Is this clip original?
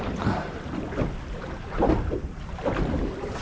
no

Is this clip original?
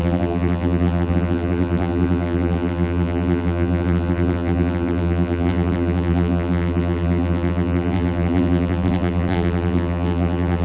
no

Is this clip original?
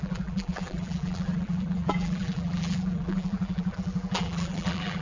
no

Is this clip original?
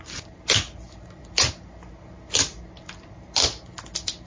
yes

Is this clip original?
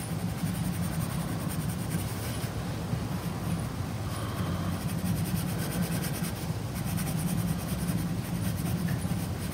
yes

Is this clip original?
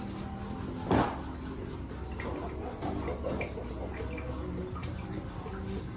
yes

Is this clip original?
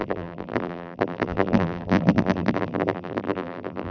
no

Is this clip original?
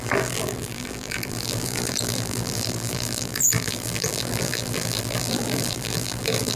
no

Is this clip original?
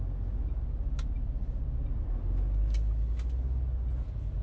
yes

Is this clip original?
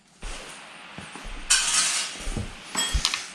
yes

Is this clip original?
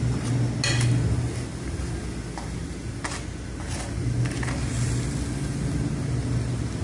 yes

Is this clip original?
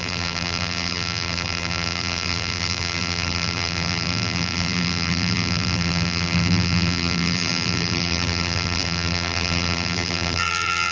no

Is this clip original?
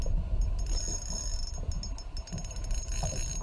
yes